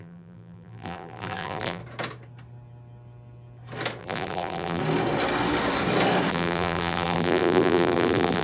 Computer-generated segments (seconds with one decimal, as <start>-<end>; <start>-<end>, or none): 0.0-1.8; 4.0-4.8; 6.3-8.4